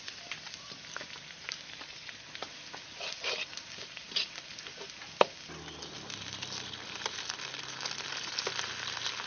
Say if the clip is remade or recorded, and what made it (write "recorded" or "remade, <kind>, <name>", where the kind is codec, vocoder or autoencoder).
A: recorded